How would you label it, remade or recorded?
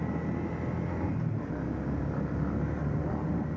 recorded